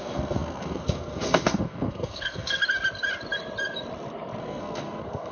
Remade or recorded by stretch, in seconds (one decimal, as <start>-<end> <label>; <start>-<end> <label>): 0.0-2.6 remade; 2.6-4.4 recorded; 4.4-5.3 remade